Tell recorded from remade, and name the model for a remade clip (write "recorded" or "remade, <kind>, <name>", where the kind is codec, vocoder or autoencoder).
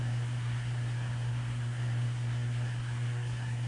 remade, codec, SNAC